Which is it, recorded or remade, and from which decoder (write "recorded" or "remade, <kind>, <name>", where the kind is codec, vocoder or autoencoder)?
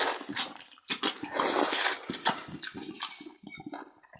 recorded